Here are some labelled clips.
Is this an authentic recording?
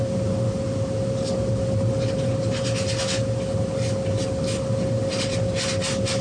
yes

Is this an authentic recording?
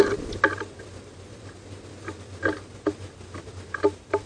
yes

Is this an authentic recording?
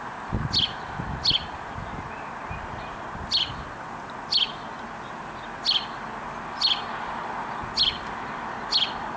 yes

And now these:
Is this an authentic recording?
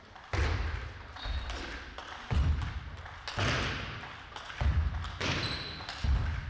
yes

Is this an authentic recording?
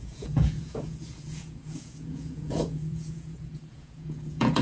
no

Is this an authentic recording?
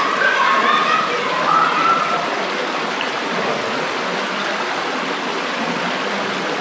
yes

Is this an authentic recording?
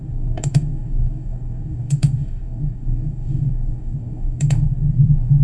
no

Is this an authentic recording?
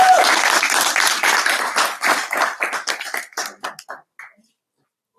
yes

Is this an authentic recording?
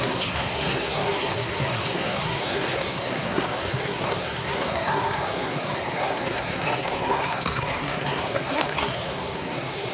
no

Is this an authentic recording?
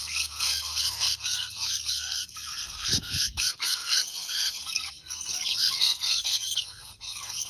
no